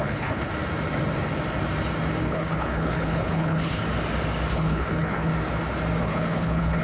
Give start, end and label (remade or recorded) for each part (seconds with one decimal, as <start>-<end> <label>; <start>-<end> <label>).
0.0-0.5 remade; 0.5-2.2 recorded; 2.2-3.8 remade; 3.8-4.5 recorded; 4.5-5.3 remade; 5.3-6.0 recorded; 6.0-6.8 remade